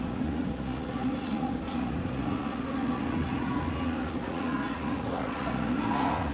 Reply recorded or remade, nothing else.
remade